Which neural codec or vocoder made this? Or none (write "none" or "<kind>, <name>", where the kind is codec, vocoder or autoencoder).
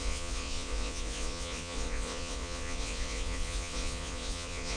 vocoder, Vocos